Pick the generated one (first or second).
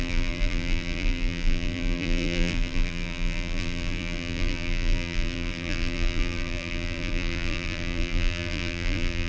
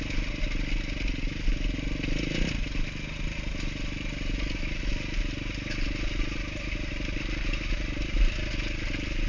first